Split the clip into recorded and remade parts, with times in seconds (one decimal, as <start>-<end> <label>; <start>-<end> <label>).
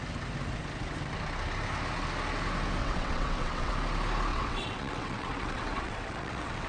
0.0-2.8 recorded; 2.8-3.7 remade; 3.7-4.3 recorded; 4.3-6.7 remade